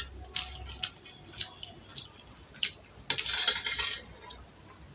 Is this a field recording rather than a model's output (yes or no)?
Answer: yes